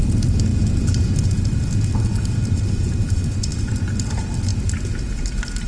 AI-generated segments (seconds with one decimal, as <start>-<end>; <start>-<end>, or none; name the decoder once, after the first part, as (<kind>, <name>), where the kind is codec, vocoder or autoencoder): none